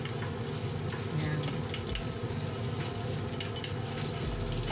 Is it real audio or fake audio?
real